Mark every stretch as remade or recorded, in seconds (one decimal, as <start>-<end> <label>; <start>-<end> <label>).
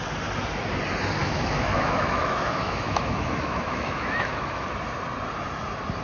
0.0-1.2 recorded; 1.2-4.7 remade; 4.7-6.0 recorded